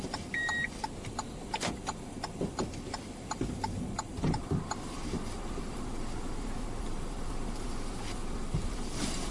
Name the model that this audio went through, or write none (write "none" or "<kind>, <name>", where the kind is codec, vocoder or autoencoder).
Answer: vocoder, BigVGAN v2